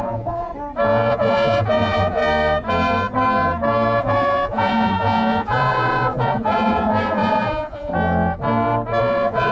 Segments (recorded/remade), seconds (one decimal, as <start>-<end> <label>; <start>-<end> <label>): 0.0-0.5 remade; 0.5-1.1 recorded; 1.1-2.2 remade; 2.2-4.0 recorded; 4.0-7.9 remade; 7.9-9.0 recorded; 9.0-9.5 remade